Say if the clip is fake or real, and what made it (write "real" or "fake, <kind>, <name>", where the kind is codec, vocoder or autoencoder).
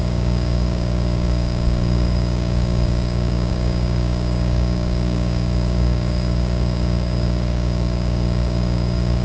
fake, codec, DAC